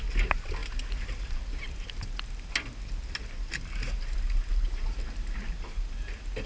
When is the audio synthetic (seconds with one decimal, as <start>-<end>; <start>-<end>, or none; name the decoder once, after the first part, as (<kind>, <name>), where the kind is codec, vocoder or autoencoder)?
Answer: none